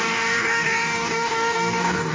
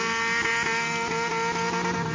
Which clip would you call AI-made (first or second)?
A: first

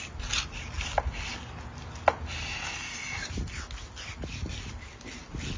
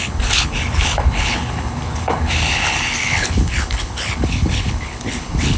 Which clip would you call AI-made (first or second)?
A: second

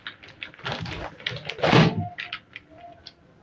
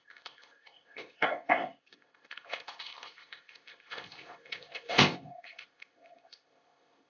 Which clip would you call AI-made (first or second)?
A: second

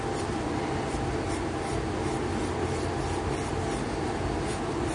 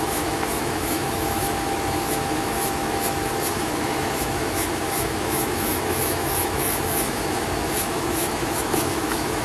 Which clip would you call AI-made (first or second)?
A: second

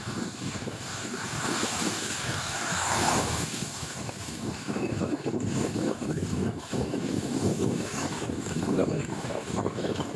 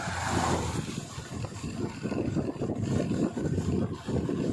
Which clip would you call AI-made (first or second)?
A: first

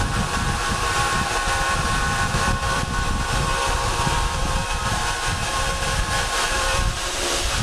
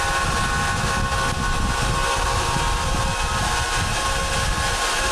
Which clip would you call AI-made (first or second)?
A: first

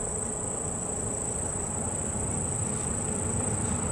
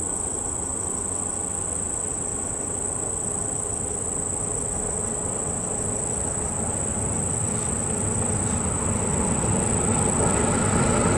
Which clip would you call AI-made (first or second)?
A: first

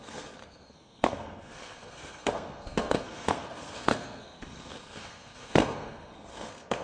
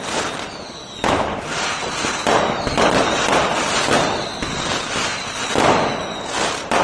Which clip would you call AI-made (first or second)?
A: first